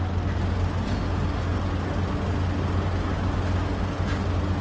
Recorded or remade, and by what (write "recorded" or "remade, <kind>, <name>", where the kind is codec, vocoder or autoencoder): recorded